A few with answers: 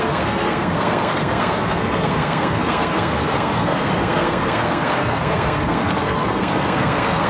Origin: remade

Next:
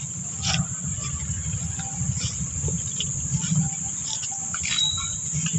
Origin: recorded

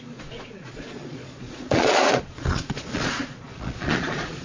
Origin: remade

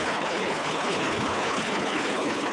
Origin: remade